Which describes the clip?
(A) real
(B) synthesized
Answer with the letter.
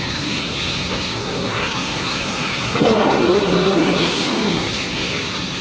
B